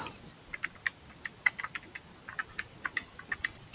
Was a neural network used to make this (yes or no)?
no